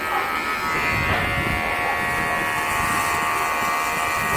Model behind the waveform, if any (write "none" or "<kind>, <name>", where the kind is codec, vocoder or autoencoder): none